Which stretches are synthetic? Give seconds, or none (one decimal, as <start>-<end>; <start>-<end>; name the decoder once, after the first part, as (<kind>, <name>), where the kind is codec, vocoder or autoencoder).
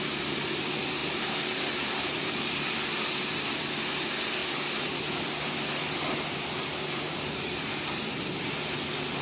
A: 1.0-2.7 (vocoder, BigVGAN v2); 5.8-8.0